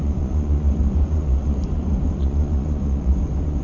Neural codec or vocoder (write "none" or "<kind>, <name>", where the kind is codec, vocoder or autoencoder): vocoder, Vocos